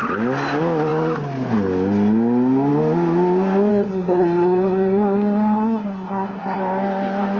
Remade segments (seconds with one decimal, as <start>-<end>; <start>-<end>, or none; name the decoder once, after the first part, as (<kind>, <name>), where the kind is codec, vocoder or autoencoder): 3.7-6.6 (codec, SNAC)